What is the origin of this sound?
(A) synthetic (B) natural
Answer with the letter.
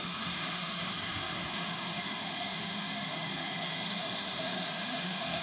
A